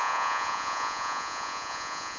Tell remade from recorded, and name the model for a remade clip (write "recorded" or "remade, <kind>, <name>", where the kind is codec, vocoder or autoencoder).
remade, vocoder, Vocos